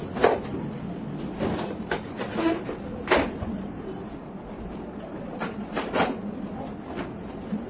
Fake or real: real